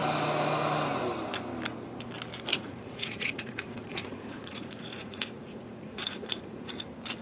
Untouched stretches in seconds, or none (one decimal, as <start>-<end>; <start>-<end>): 0.0-2.5; 6.8-7.2